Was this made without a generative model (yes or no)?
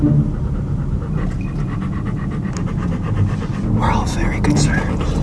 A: yes